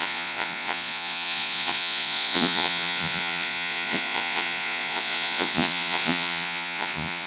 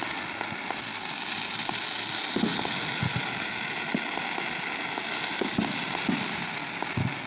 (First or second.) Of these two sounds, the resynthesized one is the first